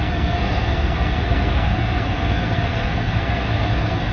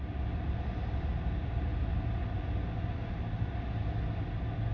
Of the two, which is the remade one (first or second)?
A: first